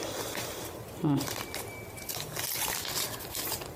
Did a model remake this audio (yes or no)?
no